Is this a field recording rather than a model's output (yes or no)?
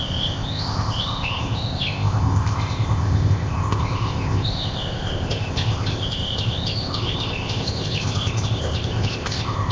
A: no